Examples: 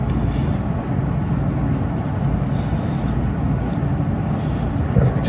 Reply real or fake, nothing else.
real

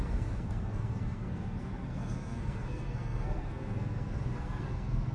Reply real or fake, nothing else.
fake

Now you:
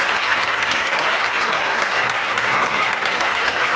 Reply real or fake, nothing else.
fake